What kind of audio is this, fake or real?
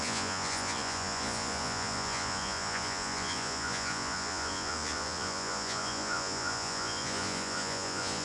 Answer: fake